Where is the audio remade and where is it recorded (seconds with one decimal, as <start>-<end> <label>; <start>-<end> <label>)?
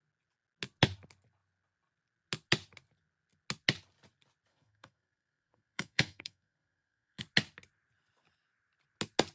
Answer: 0.0-4.5 recorded; 4.5-7.2 remade; 7.2-9.3 recorded